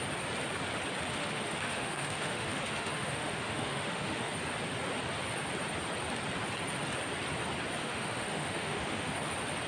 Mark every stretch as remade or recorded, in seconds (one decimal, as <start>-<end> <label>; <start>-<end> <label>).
0.0-1.1 recorded; 1.1-4.3 remade; 4.3-7.8 recorded; 7.8-9.1 remade; 9.1-9.7 recorded